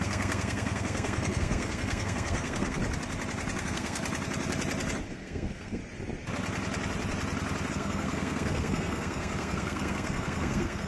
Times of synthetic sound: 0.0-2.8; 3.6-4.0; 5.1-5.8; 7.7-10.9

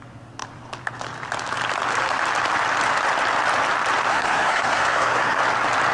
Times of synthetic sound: 4.1-5.4

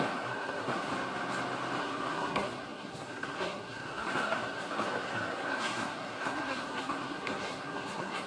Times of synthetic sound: 0.0-0.9; 1.8-8.3

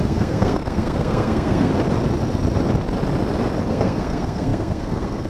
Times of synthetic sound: 0.0-1.7; 3.7-5.3

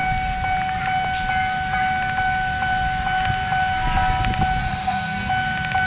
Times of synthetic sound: 4.6-5.3

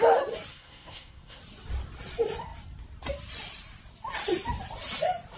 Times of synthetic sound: 0.5-1.4